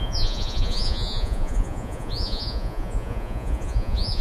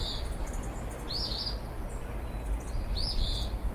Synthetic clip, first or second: first